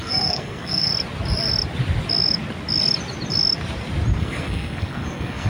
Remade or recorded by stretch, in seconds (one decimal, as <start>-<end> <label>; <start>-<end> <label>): 0.0-0.9 remade; 0.9-4.2 recorded; 4.2-5.5 remade